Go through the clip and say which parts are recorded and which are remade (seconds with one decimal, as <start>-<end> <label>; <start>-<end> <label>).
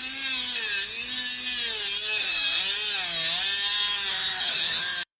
0.0-2.2 recorded; 2.2-2.6 remade; 2.6-4.1 recorded; 4.1-5.2 remade